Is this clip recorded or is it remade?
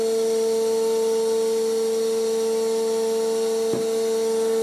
recorded